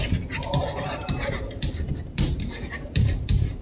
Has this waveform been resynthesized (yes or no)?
yes